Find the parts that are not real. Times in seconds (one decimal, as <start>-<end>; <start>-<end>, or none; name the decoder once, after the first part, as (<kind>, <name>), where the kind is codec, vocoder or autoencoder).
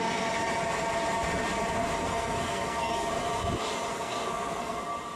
2.0-3.1 (codec, SNAC); 3.9-4.8